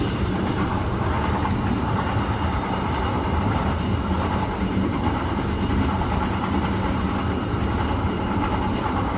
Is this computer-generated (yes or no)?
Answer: yes